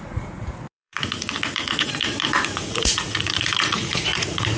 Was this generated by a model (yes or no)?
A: yes